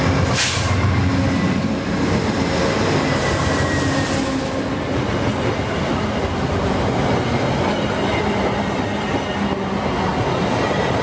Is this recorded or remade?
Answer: recorded